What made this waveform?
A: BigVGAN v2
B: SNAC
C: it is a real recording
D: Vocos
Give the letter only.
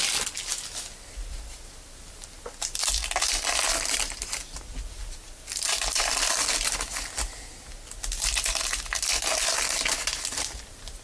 C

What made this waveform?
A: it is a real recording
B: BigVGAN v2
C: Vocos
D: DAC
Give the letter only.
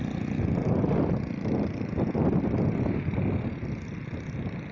A